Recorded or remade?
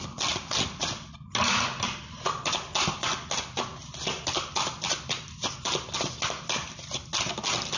recorded